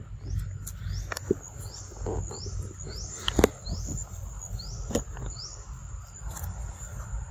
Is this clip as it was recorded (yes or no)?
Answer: yes